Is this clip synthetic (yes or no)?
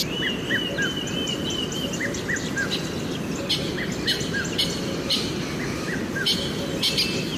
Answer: no